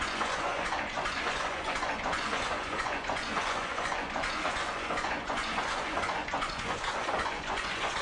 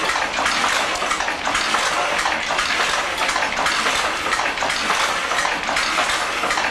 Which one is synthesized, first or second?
first